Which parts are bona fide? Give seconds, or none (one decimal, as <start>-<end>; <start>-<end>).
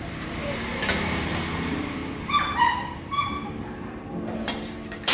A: 2.0-3.1